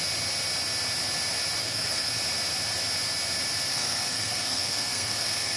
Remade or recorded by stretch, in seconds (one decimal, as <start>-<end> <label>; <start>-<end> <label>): 0.0-1.6 recorded; 1.6-2.1 remade; 2.1-3.7 recorded; 3.7-5.6 remade